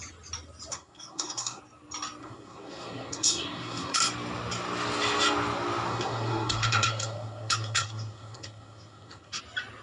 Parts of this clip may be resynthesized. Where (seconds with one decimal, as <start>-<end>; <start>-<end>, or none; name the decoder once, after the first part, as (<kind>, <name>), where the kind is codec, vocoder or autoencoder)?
0.7-1.6 (codec, SNAC); 2.2-4.0; 5.9-9.4